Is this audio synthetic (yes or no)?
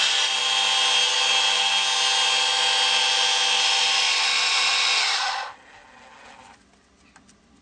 no